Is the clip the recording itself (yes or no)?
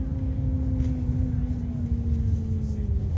yes